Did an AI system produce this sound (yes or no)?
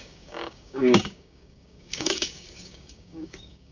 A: yes